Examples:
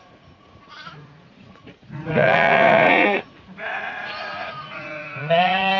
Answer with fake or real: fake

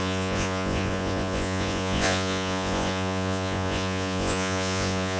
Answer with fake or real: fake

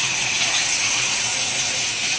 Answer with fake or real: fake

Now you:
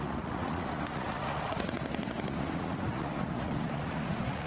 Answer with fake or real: fake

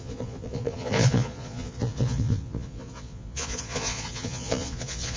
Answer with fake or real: fake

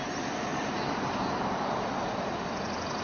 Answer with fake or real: real